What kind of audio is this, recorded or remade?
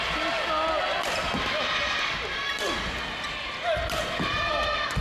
recorded